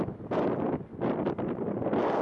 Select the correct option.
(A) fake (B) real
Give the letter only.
B